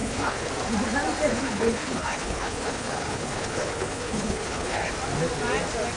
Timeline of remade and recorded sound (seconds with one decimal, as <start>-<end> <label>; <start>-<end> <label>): 0.0-0.5 remade; 0.5-1.3 recorded; 1.3-4.9 remade; 4.9-6.0 recorded